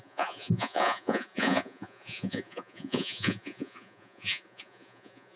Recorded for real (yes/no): no